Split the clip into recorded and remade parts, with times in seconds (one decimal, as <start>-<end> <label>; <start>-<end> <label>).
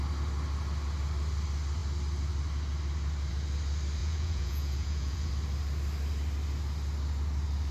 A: 0.0-4.0 recorded; 4.0-5.3 remade; 5.3-7.7 recorded